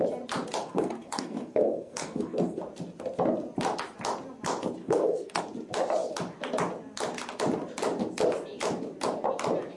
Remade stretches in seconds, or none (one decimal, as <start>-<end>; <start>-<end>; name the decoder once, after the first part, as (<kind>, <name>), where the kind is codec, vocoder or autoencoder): 0.6-2.6 (codec, SNAC); 4.8-5.4